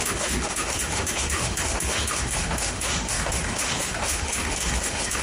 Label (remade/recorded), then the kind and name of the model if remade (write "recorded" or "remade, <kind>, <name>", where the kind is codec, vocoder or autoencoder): remade, autoencoder, DAC-VAE